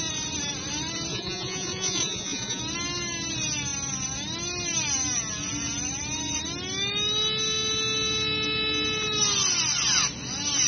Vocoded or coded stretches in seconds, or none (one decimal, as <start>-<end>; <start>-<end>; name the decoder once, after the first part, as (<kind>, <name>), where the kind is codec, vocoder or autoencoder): 1.1-2.6 (vocoder, Vocos)